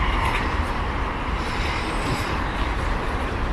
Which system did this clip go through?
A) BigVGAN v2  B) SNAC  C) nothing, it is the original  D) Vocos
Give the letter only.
A